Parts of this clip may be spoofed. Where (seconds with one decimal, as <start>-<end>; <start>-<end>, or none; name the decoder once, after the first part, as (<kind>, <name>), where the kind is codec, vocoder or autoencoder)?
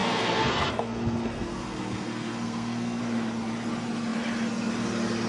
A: 0.0-3.0 (codec, SNAC)